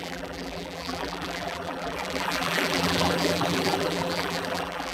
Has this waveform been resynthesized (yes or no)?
yes